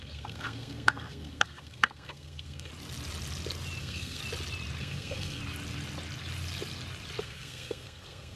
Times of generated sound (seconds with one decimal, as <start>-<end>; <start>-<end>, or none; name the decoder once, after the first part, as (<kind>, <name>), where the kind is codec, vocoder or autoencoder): 0.0-2.7 (codec, SNAC); 3.8-4.2; 4.8-5.4; 7.2-8.4